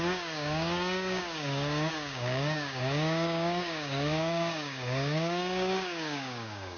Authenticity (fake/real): fake